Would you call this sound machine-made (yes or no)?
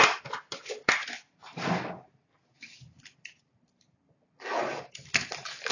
no